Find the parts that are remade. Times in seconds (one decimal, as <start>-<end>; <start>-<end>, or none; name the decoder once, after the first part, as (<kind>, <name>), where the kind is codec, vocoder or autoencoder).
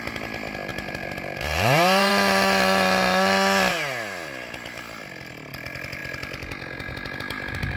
0.7-2.1 (vocoder, BigVGAN v2)